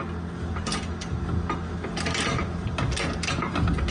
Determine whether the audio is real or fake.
real